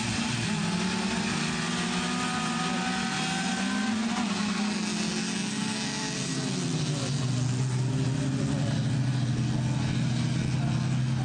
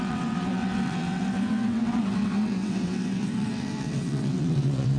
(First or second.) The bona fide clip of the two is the first